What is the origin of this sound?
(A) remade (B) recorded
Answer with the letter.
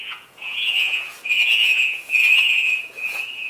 A